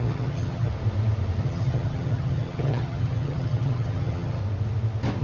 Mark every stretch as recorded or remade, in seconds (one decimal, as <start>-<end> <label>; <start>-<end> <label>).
0.0-0.7 remade; 0.7-1.4 recorded; 1.4-4.4 remade; 4.4-5.2 recorded